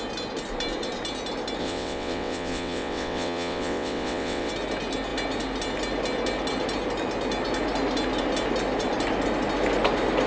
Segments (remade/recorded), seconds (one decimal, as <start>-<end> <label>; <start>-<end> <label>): 0.0-1.6 recorded; 1.6-4.5 remade; 4.5-10.3 recorded